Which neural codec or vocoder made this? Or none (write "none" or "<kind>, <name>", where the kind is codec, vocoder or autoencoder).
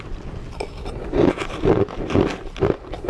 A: none